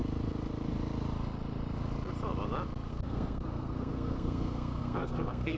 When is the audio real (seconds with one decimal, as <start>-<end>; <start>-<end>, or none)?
0.0-2.9